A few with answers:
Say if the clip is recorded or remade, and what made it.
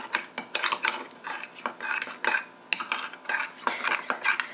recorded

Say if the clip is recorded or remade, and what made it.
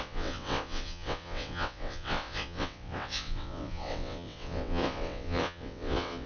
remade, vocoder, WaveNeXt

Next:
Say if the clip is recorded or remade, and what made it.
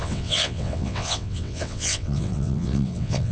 remade, vocoder, WaveNeXt